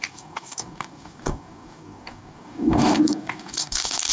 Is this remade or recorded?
remade